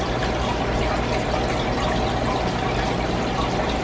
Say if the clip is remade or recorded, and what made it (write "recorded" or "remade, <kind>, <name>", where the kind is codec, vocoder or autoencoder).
recorded